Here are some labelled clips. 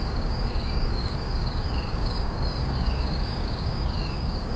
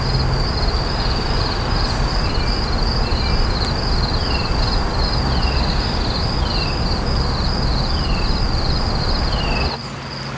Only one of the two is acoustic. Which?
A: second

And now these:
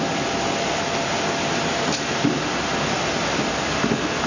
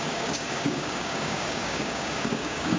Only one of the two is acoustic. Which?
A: first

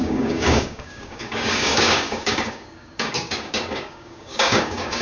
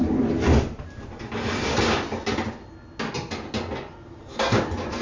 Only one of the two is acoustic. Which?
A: second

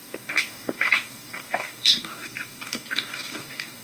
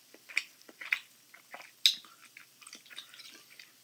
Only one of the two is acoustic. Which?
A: second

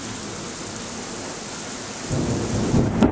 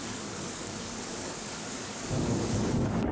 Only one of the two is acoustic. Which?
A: first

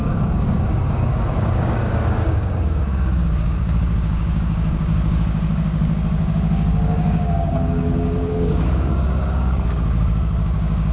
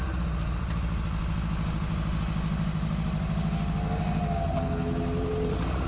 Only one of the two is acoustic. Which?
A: second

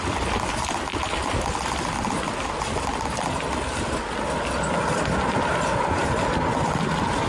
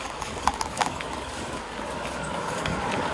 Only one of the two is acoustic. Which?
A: first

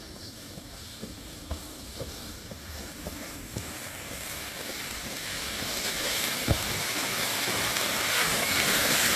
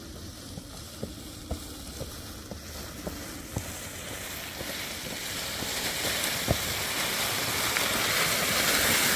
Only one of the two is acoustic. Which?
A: second